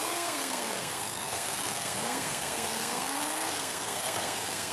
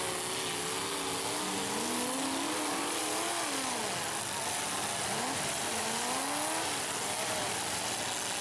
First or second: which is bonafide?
second